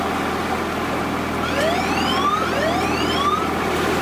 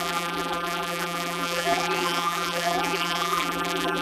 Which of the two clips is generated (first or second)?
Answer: second